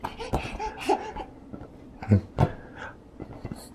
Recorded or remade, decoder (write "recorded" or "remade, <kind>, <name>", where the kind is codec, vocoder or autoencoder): recorded